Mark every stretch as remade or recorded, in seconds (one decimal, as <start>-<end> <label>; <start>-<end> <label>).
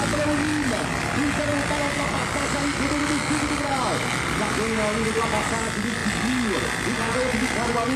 0.0-8.0 recorded